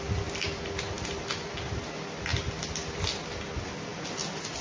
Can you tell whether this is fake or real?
real